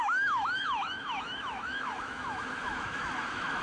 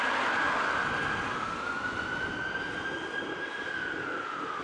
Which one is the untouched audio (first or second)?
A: second